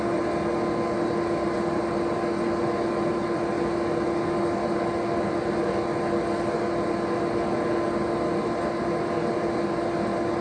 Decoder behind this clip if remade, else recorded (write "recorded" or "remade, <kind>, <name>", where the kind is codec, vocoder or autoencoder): recorded